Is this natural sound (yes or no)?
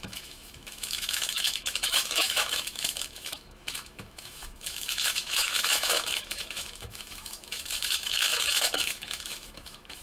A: no